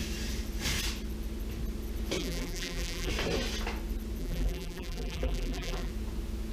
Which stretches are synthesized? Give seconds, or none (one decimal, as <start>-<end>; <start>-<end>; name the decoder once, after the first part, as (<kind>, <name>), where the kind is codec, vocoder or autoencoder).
2.2-3.1 (vocoder, BigVGAN v2); 4.2-5.9